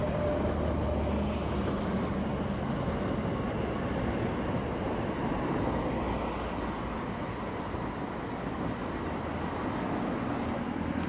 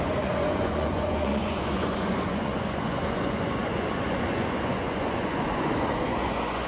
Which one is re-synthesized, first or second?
second